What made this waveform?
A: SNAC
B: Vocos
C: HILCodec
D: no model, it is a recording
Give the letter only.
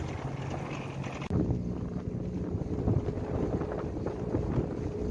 D